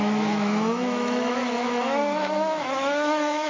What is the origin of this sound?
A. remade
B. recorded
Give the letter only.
A